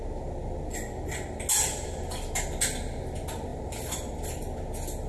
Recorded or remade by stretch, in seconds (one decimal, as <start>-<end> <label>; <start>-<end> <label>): 0.0-3.5 recorded; 3.5-4.3 remade; 4.3-5.1 recorded